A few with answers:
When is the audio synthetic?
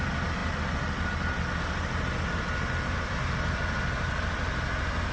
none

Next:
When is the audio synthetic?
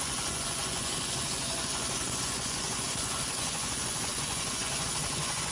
0.0-5.5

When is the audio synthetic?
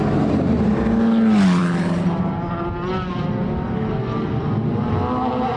none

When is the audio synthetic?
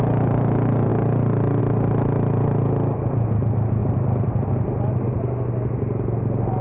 3.8-4.5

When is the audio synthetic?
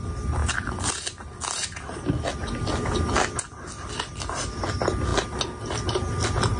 none